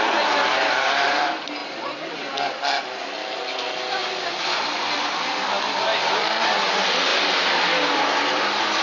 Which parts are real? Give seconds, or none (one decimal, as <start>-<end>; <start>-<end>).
0.0-8.8